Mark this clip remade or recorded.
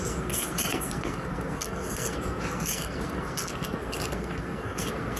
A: remade